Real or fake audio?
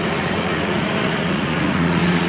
fake